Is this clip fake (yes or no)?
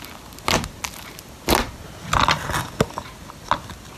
no